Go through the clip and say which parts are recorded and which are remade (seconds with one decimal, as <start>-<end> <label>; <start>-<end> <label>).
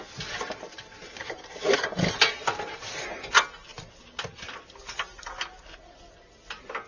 0.0-1.0 recorded; 1.0-1.7 remade; 1.7-6.9 recorded